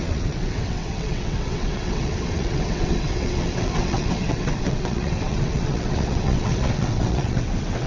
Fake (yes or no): yes